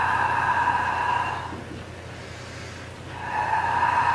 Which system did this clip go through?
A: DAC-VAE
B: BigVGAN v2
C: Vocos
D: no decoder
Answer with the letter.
D